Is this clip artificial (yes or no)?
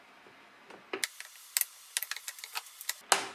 no